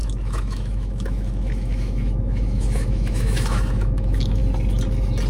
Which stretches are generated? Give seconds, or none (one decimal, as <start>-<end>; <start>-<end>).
0.0-4.4